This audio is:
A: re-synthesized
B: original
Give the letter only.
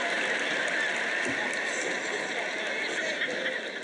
B